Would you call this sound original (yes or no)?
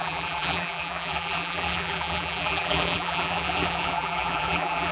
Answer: no